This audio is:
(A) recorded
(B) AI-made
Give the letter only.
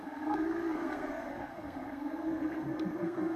B